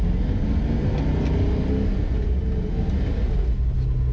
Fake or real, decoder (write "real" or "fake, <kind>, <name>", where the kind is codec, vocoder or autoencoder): real